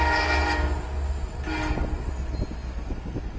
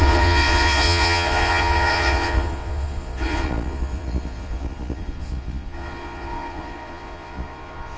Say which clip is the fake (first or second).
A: second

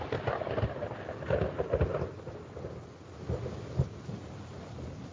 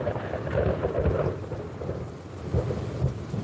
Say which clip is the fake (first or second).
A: second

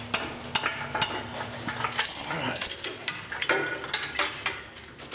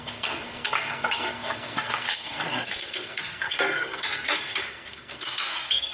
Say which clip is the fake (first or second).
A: second